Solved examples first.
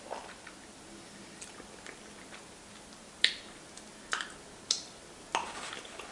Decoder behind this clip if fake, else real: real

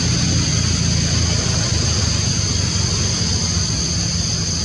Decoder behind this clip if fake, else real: real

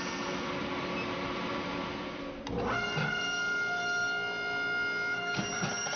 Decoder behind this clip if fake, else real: real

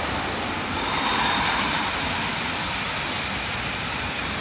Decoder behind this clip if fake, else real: real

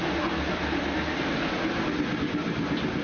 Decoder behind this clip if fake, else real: real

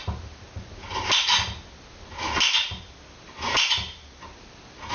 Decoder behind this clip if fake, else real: real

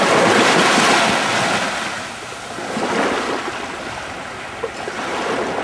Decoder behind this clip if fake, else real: real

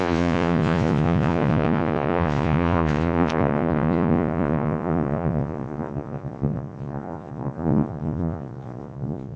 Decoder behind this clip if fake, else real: fake, vocoder, Vocos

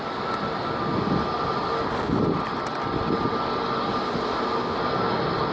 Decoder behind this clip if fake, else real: real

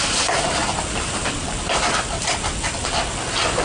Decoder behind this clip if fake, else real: real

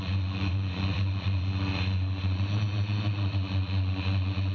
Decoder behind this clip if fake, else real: fake, vocoder, Vocos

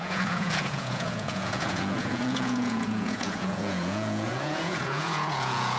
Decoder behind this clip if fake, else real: fake, vocoder, Vocos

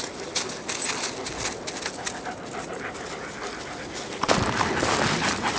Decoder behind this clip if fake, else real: real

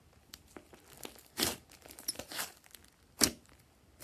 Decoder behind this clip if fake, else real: real